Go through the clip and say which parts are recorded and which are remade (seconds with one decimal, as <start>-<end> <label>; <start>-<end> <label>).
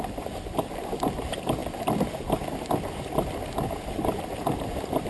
0.0-5.1 recorded